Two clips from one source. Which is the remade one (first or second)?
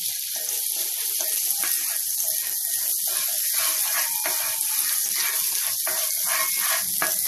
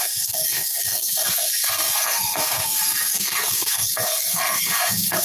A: second